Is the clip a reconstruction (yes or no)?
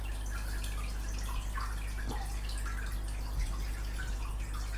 no